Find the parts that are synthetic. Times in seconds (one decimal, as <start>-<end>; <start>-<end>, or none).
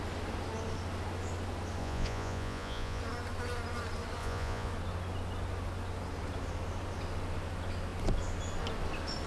1.8-3.0; 4.2-4.7